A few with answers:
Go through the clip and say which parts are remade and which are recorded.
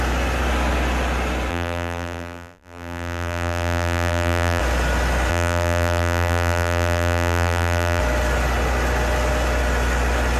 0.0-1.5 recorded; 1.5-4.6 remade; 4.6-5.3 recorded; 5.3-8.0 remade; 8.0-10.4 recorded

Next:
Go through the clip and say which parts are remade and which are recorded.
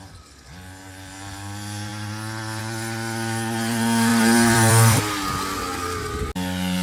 0.0-4.1 recorded; 4.1-5.0 remade; 5.0-6.8 recorded